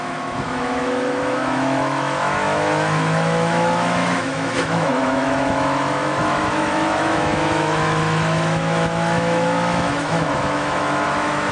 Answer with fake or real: fake